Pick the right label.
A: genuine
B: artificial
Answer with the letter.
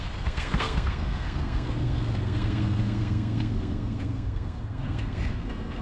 B